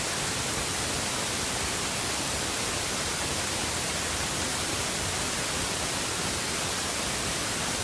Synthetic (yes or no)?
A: yes